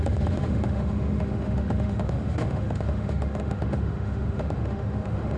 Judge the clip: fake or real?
fake